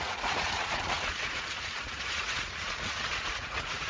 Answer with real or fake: fake